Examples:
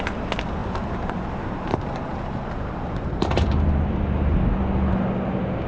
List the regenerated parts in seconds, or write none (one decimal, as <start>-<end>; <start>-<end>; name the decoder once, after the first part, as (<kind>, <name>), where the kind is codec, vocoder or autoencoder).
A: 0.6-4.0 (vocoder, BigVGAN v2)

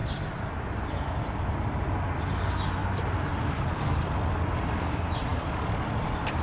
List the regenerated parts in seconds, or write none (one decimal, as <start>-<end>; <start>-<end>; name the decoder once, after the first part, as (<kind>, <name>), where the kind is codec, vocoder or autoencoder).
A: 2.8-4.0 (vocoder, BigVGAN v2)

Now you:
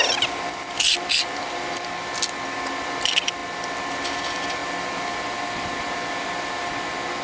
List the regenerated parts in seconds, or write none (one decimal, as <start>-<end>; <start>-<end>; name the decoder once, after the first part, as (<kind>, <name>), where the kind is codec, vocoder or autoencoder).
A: 4.6-6.7 (vocoder, BigVGAN v2)

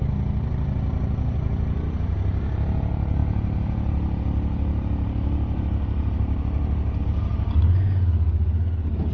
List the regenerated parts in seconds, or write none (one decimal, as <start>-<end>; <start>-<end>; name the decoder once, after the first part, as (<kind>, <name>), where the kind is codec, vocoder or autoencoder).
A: none

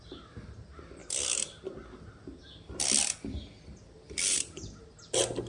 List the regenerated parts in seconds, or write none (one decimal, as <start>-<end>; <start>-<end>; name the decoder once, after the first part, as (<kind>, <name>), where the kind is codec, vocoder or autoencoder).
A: 0.0-1.0 (vocoder, BigVGAN v2); 4.3-5.5

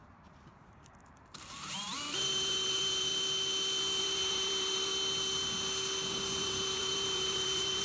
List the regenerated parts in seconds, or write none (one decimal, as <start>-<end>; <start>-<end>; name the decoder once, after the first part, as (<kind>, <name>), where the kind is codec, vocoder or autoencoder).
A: 0.0-3.1 (vocoder, BigVGAN v2); 4.0-4.9; 6.1-7.8

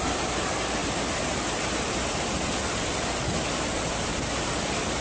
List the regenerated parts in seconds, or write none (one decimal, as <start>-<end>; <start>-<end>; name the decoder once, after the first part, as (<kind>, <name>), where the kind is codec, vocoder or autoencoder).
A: 0.8-2.3 (vocoder, BigVGAN v2); 4.1-5.0

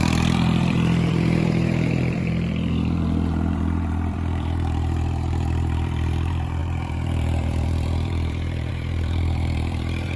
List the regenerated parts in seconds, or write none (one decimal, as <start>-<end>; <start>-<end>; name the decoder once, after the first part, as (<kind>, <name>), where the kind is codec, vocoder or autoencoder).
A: 0.0-10.2 (vocoder, BigVGAN v2)